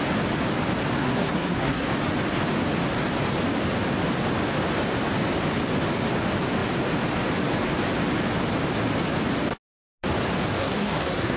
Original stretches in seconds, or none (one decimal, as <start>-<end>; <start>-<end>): 0.0-1.0; 1.9-10.6